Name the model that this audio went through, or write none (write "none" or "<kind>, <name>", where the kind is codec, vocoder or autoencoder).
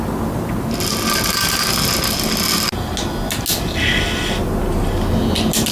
none